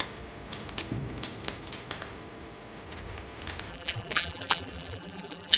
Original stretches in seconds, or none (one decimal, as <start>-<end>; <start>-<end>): 0.0-3.7